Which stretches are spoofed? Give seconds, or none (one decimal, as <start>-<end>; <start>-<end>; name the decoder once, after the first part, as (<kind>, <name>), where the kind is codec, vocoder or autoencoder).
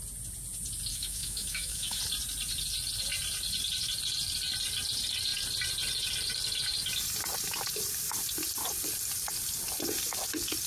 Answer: 0.9-2.0 (autoencoder, DAC-VAE)